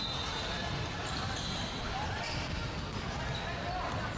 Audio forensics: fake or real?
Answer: real